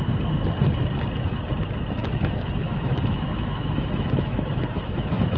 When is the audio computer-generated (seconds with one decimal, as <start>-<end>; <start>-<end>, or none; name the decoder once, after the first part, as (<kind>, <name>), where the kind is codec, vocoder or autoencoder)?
2.0-5.4 (autoencoder, DAC-VAE)

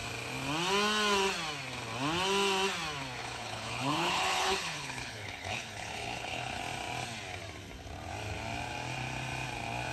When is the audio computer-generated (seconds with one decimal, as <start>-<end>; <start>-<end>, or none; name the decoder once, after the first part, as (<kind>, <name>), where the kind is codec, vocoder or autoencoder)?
3.2-6.6 (codec, HILCodec)

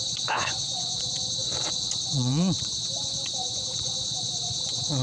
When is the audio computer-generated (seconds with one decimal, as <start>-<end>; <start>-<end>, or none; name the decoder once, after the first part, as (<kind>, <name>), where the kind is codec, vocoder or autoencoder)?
0.0-5.0 (vocoder, Vocos)

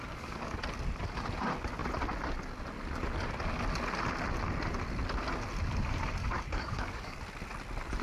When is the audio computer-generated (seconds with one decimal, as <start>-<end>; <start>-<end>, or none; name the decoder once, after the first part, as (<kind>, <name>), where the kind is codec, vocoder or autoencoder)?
0.0-0.6 (codec, DAC); 6.2-7.2

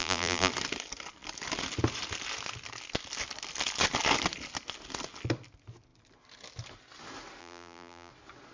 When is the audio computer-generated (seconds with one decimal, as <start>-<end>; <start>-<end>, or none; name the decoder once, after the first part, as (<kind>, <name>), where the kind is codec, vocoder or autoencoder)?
0.0-0.5 (vocoder, BigVGAN v2); 7.4-8.1